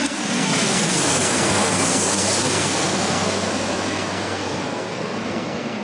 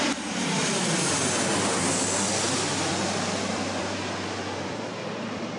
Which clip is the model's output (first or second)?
first